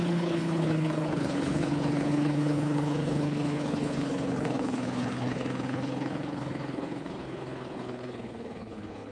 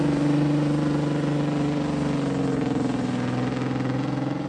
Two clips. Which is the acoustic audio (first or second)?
second